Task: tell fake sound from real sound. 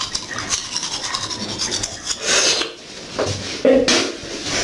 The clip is real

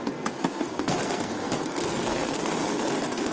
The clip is fake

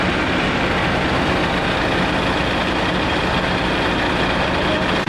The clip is real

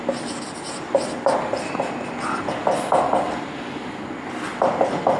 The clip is real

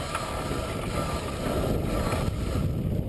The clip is real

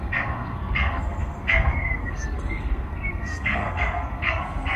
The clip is fake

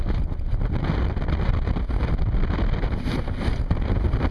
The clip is real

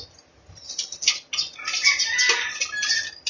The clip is real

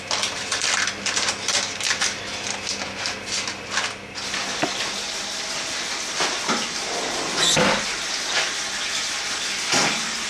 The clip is real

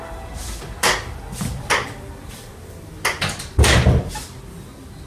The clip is real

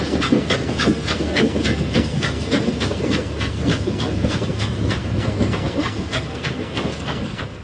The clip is fake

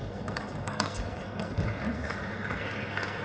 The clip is fake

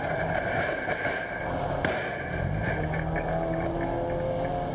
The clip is real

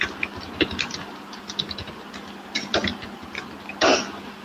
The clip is real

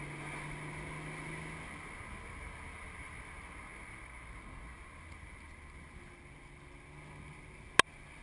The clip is real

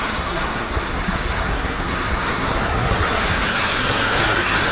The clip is fake